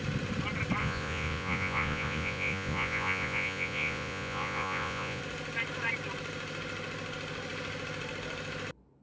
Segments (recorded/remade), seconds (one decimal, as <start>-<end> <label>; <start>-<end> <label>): 0.0-0.8 recorded; 0.8-5.2 remade; 5.2-9.0 recorded